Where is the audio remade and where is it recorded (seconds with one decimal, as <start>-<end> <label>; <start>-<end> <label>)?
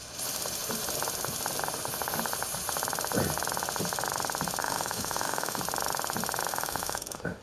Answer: 0.0-4.6 recorded; 4.6-5.6 remade; 5.6-6.5 recorded; 6.5-7.4 remade